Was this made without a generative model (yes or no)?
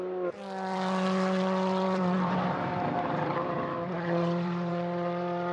no